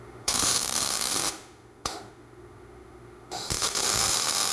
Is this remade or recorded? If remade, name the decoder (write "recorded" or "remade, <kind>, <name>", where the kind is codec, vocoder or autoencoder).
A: remade, autoencoder, DAC-VAE